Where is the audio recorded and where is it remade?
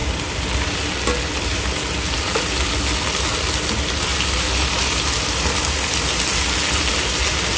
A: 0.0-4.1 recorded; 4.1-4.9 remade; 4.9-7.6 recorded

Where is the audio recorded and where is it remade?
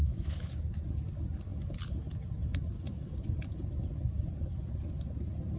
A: 0.0-0.5 remade; 0.5-5.6 recorded